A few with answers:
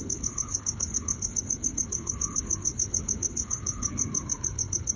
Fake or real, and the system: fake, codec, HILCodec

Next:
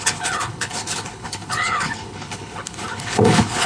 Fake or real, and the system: fake, codec, HILCodec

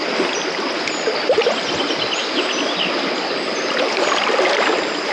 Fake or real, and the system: real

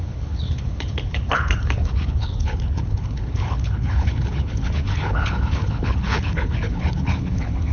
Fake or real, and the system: fake, codec, HILCodec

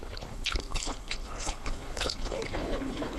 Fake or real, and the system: fake, codec, HILCodec